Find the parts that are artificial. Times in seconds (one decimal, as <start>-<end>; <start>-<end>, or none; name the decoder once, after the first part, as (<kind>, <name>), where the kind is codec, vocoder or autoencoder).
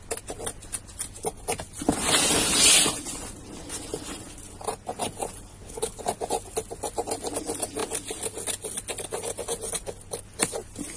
5.5-6.0 (codec, HILCodec)